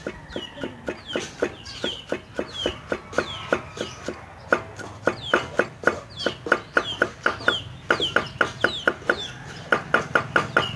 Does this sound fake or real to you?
real